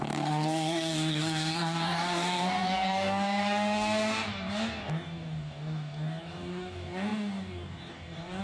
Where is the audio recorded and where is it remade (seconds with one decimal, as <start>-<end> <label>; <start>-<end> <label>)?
0.0-8.4 remade